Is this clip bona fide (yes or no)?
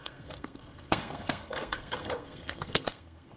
no